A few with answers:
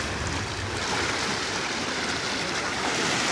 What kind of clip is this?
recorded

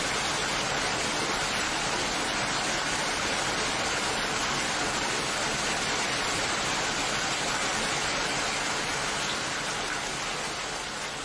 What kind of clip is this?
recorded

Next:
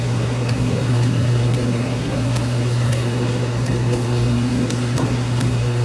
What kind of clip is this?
remade